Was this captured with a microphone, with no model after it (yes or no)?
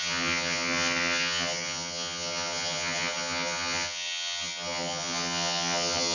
no